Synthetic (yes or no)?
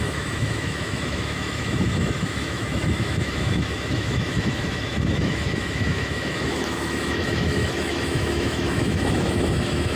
yes